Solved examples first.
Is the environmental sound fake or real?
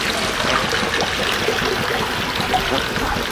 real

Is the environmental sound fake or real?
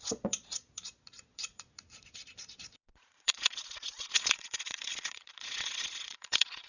fake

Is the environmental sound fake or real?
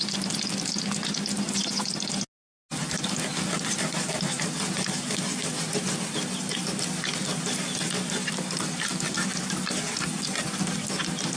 real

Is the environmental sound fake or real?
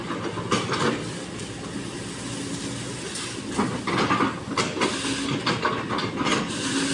real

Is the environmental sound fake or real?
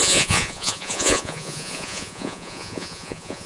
fake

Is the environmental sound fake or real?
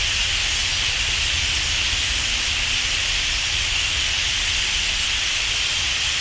real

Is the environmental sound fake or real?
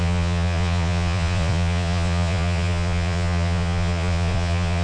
fake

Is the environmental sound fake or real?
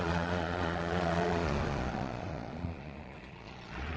fake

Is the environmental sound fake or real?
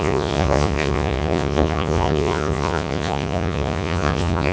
fake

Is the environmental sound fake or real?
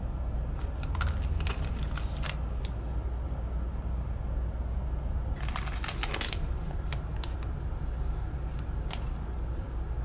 real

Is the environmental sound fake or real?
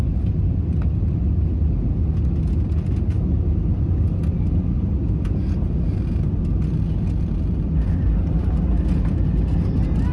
real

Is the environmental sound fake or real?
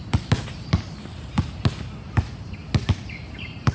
real